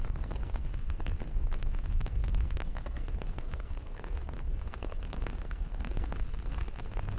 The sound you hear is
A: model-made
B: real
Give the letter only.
A